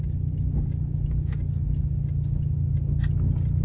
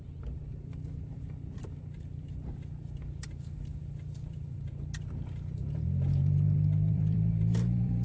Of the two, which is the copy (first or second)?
second